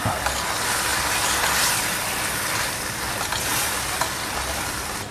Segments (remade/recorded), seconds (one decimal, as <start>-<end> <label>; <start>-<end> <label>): 0.0-5.1 recorded